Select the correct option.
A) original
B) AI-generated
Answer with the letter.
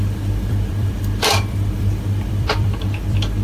B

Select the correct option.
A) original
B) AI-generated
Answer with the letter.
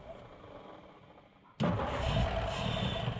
A